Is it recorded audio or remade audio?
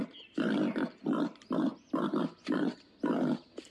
recorded